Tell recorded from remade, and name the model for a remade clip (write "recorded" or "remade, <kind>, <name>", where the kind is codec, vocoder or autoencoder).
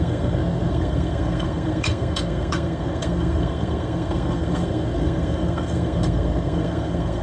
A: remade, codec, SNAC